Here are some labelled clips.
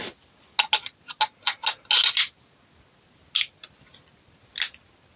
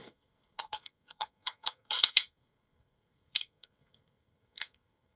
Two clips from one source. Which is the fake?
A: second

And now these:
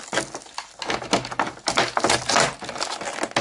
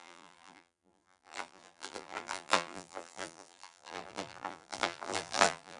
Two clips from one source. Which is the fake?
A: second